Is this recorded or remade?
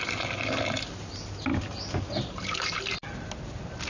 recorded